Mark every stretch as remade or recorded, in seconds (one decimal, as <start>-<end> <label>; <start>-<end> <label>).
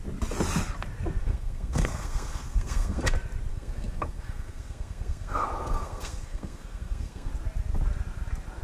0.0-1.2 recorded; 1.2-3.0 remade; 3.0-3.5 recorded; 3.5-7.3 remade; 7.3-8.6 recorded